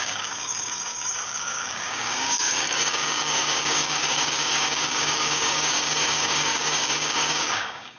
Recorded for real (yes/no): no